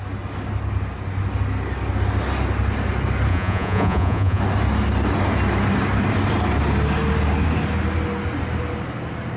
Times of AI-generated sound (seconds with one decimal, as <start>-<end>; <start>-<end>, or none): 3.3-4.4